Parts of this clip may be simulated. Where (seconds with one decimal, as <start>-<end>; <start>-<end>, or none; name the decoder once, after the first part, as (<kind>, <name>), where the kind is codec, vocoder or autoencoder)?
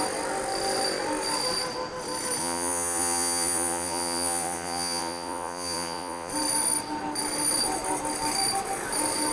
2.4-6.3 (vocoder, Vocos)